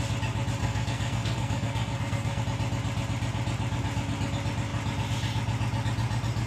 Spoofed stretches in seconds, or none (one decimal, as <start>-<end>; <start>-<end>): 0.6-2.4